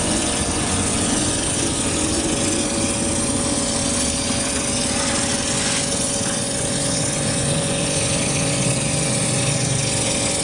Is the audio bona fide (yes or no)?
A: no